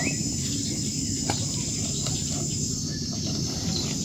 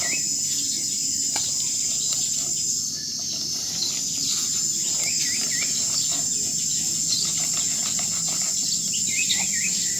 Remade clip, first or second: first